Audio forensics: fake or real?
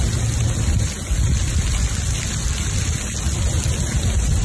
real